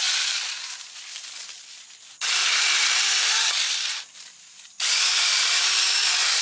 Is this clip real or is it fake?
real